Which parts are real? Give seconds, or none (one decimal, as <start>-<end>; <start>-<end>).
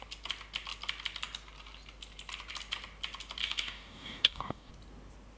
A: 0.0-3.4; 4.7-5.4